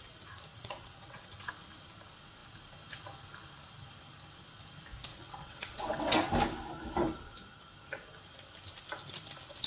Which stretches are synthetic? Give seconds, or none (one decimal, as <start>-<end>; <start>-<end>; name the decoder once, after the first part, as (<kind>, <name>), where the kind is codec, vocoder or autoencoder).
0.5-1.5 (vocoder, WaveNeXt); 5.1-6.2